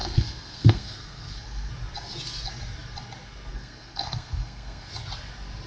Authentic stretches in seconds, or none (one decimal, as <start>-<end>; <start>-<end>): 1.7-3.5; 4.9-5.7